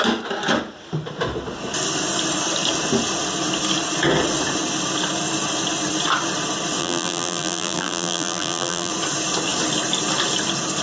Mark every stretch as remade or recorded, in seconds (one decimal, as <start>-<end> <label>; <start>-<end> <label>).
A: 0.0-6.8 recorded; 6.8-8.9 remade; 8.9-10.8 recorded